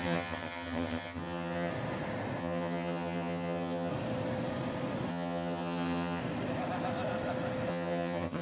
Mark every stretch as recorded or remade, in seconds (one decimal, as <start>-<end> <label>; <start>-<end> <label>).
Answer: 0.0-1.7 remade; 1.7-2.4 recorded; 2.4-3.9 remade; 3.9-5.1 recorded; 5.1-6.2 remade; 6.2-7.7 recorded; 7.7-8.4 remade